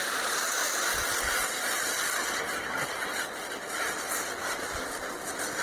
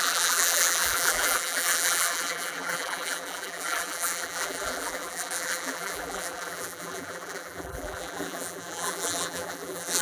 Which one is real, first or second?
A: first